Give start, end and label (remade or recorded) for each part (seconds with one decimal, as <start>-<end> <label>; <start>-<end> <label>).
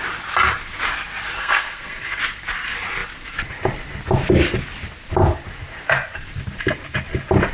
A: 0.0-1.4 recorded; 1.4-2.2 remade; 2.2-7.5 recorded